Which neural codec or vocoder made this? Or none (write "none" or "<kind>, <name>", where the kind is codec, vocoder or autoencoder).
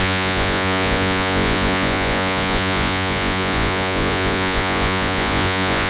vocoder, Vocos